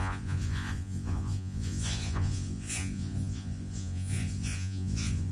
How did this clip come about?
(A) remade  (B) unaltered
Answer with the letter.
A